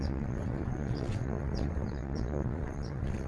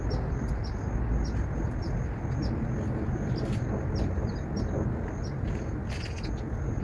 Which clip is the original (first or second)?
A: second